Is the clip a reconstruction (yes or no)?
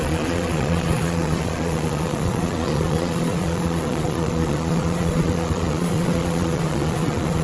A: yes